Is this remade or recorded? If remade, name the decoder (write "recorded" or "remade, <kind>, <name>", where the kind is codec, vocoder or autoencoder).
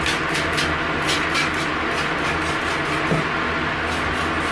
recorded